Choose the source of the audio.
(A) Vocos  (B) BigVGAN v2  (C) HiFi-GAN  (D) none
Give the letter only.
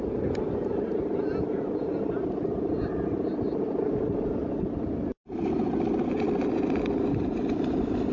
D